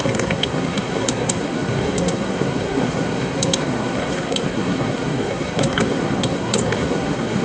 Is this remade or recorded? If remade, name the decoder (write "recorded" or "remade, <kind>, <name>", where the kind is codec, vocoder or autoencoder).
remade, codec, SNAC